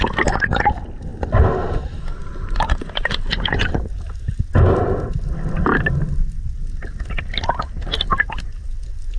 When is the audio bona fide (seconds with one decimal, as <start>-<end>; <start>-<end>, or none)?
0.0-2.2; 3.9-9.2